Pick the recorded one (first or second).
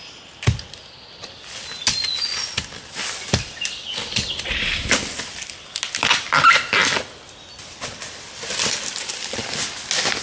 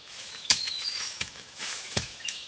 first